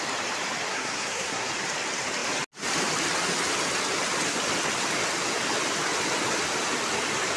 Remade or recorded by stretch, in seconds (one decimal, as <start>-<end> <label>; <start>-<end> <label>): 0.0-0.7 recorded; 0.7-1.5 remade; 1.5-7.4 recorded